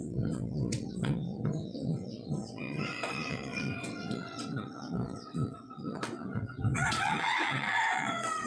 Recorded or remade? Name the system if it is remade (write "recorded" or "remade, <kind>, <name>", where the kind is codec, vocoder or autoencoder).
remade, vocoder, WaveNeXt